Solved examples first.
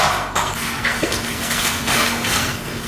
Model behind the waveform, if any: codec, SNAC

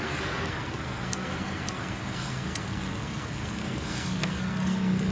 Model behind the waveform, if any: codec, SNAC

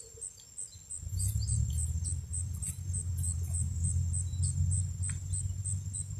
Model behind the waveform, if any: none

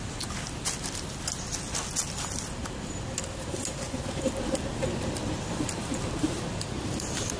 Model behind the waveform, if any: none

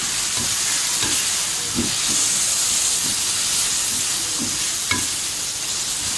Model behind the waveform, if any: none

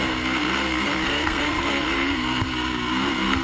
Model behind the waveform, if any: codec, SNAC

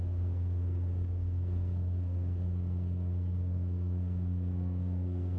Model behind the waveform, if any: codec, SNAC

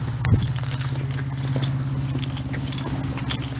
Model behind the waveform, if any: none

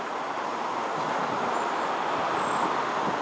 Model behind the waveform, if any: none